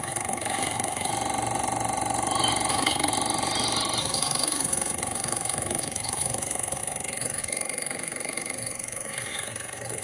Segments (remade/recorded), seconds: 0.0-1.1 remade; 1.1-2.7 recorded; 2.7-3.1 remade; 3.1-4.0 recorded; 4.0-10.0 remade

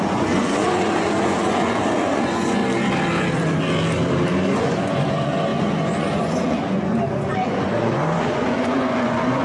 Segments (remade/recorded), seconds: 0.0-2.6 remade; 2.6-4.6 recorded; 4.6-9.4 remade